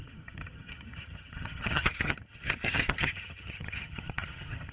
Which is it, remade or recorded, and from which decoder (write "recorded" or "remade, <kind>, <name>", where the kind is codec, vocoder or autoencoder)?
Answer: remade, vocoder, HiFi-GAN